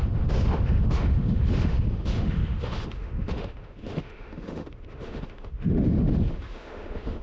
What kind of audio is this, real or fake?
fake